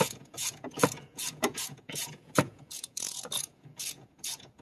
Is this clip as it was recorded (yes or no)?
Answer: no